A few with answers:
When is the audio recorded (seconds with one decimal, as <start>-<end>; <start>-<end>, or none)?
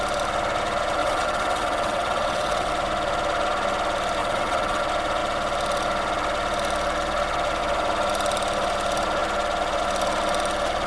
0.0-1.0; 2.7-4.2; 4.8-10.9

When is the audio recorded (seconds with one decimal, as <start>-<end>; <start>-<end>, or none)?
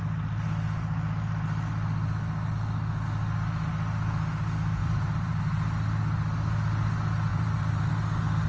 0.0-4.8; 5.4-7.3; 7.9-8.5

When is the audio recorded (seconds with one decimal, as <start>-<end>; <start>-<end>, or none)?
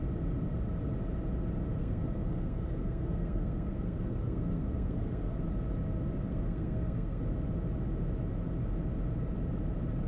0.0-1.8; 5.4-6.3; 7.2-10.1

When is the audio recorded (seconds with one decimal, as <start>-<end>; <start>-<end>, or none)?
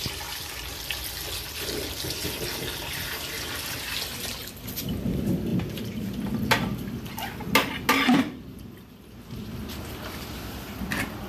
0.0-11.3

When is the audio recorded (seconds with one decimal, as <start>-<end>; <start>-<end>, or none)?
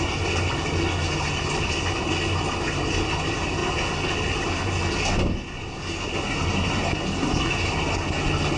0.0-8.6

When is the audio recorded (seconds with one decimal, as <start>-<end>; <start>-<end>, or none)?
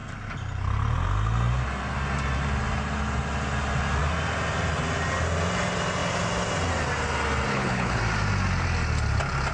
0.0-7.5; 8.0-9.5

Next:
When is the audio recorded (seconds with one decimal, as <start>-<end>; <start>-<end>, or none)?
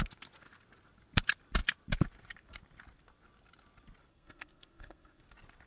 0.0-4.1; 5.2-5.7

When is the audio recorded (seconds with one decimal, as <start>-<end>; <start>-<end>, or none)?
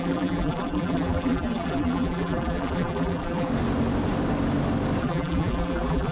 3.5-5.0